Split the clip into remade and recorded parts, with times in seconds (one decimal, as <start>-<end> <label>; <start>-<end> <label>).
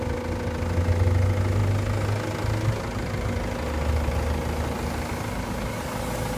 0.0-6.4 recorded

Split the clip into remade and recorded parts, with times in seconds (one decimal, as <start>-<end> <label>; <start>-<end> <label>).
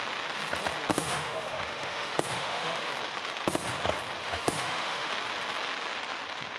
0.0-0.9 recorded; 0.9-2.9 remade; 2.9-4.2 recorded; 4.2-5.1 remade; 5.1-6.6 recorded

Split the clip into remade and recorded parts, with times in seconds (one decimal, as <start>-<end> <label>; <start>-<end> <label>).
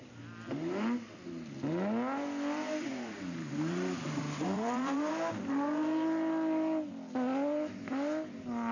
0.0-2.9 recorded; 2.9-5.1 remade; 5.1-8.7 recorded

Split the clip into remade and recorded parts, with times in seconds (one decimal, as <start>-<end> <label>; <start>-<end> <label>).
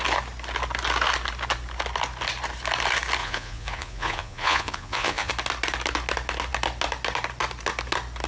0.0-3.2 recorded; 3.2-5.3 remade; 5.3-8.3 recorded